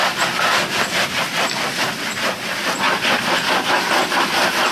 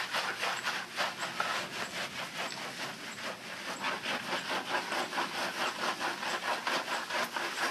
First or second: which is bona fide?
second